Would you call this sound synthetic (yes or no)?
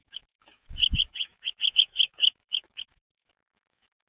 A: yes